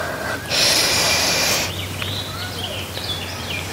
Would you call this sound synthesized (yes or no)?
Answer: yes